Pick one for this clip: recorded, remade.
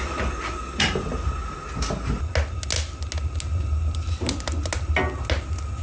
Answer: recorded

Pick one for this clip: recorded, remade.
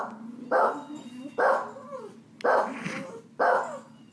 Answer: recorded